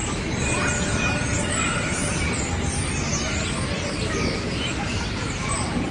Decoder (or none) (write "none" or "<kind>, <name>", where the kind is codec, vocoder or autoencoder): none